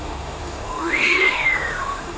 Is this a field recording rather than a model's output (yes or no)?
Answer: no